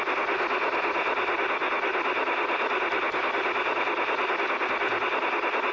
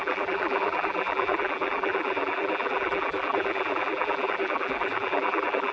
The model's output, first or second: second